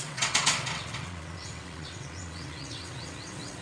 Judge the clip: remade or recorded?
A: remade